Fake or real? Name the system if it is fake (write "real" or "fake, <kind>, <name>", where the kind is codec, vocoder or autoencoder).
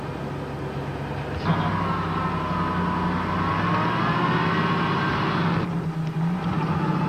real